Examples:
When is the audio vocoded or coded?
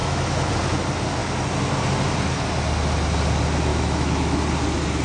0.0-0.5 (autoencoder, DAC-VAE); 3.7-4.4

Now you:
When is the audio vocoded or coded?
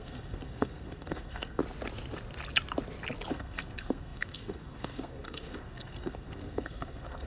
0.0-1.6 (codec, SNAC); 3.3-7.3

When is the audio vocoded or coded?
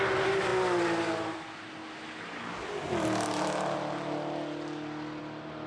none